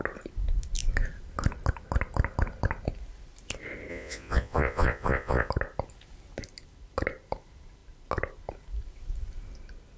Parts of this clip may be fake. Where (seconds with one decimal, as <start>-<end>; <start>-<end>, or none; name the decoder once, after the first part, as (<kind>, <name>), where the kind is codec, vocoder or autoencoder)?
3.9-5.5 (vocoder, Vocos)